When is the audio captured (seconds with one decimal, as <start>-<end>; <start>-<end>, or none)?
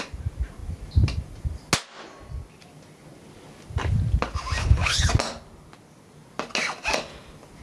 0.0-4.6; 5.1-7.6